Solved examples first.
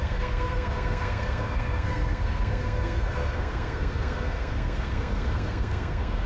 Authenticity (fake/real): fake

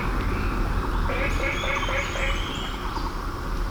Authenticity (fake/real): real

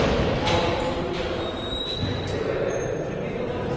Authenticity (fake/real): real